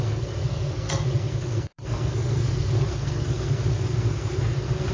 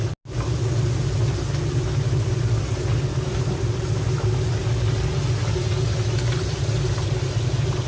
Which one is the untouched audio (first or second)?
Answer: second